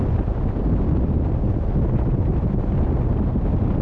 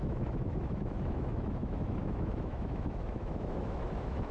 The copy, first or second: second